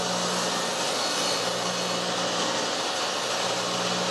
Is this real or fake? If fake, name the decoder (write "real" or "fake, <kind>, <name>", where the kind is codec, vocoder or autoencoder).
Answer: real